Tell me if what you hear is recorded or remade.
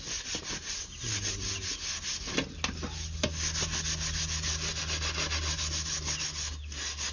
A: recorded